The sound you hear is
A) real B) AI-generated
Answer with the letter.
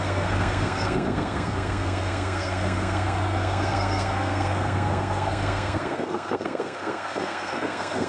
B